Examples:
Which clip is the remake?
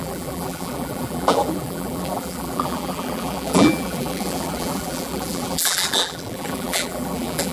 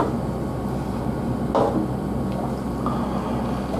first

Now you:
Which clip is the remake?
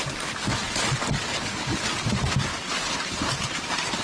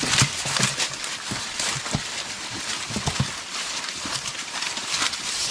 second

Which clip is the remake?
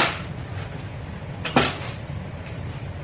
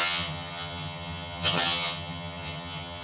second